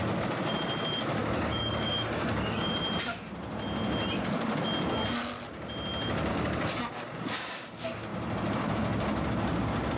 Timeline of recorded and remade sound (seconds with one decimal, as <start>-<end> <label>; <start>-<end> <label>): 0.0-1.2 recorded; 1.2-2.7 remade; 2.7-6.3 recorded; 6.3-7.2 remade; 7.2-10.0 recorded